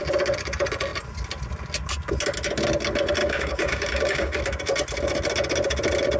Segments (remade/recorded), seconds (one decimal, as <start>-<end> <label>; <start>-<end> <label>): 0.0-3.2 recorded; 3.2-4.4 remade; 4.4-6.2 recorded